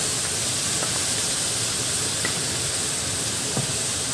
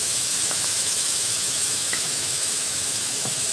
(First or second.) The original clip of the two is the first